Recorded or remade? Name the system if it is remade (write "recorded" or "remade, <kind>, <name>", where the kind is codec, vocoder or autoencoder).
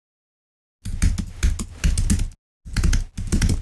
recorded